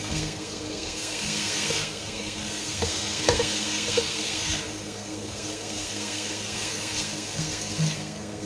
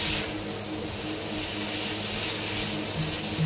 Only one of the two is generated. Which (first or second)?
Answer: first